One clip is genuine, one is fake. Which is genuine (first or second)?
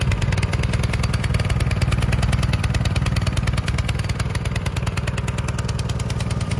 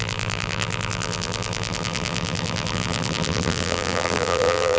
first